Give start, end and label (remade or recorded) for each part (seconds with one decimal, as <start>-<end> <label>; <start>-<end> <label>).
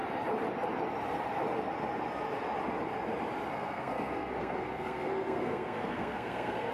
0.0-3.5 recorded; 3.5-6.7 remade